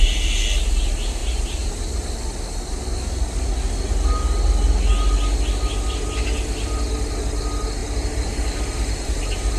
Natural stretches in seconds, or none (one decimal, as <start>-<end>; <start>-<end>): 0.0-1.2; 1.7-7.8